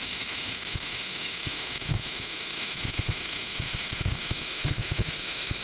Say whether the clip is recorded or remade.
remade